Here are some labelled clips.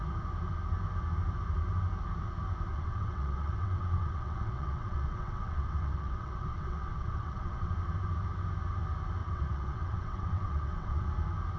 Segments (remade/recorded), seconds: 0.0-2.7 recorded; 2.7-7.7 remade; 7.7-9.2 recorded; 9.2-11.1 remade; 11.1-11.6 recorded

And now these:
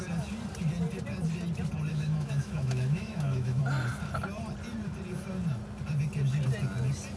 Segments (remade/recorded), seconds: 0.0-1.9 recorded; 1.9-3.6 remade; 3.6-7.2 recorded